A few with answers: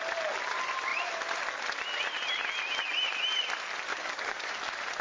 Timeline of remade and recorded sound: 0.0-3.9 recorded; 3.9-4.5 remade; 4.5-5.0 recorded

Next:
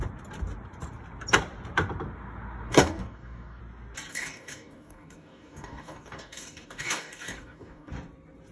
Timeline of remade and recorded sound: 0.0-2.7 recorded; 2.7-3.6 remade; 3.6-4.1 recorded; 4.1-7.9 remade; 7.9-8.5 recorded

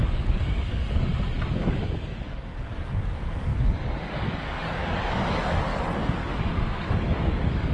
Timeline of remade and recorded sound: 0.0-1.1 remade; 1.1-1.6 recorded; 1.6-5.7 remade; 5.7-6.2 recorded; 6.2-7.7 remade